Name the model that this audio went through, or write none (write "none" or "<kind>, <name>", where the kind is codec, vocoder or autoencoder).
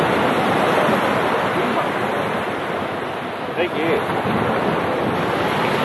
none